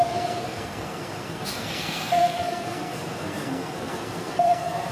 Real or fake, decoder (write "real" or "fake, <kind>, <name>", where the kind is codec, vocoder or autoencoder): fake, codec, SNAC